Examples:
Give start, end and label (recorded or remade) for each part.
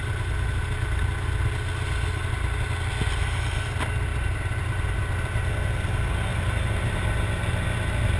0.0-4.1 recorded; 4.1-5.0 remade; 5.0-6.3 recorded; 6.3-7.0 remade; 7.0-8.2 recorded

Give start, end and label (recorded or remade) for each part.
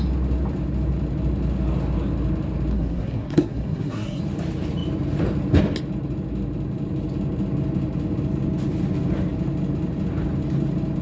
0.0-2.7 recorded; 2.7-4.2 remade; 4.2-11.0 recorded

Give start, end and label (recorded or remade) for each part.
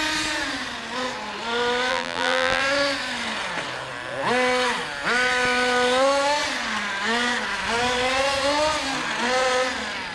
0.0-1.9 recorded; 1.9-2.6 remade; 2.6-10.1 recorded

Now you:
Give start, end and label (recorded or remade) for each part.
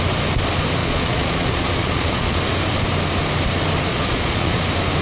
0.0-0.8 recorded; 0.8-2.4 remade; 2.4-3.9 recorded; 3.9-4.6 remade; 4.6-5.0 recorded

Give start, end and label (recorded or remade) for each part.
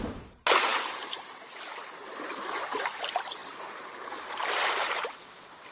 0.0-5.7 remade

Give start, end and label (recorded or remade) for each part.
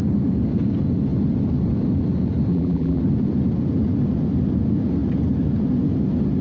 0.0-2.5 recorded; 2.5-3.0 remade; 3.0-6.4 recorded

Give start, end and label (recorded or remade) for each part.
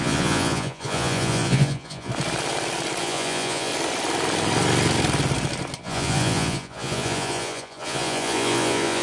0.0-2.1 remade; 2.1-3.0 recorded; 3.0-3.7 remade; 3.7-5.8 recorded; 5.8-9.0 remade